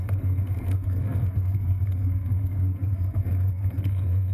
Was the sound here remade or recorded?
remade